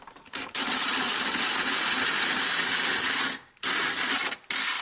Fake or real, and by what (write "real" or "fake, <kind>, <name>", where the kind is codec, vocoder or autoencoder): real